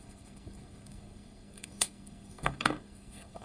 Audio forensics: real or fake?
fake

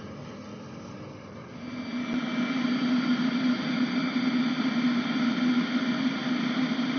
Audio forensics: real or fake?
real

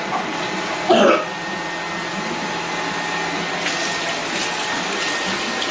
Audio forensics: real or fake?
real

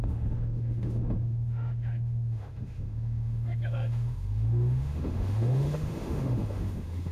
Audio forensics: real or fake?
fake